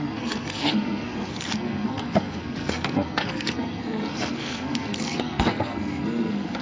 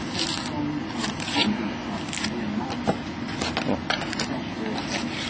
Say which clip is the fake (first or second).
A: first